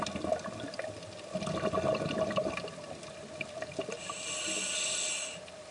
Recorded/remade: recorded